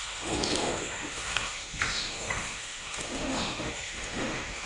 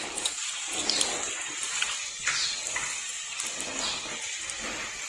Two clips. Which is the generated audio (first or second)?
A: first